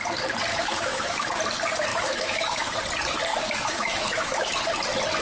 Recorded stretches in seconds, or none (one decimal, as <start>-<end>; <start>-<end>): 0.0-0.5; 1.4-1.9; 2.8-3.3; 4.6-5.2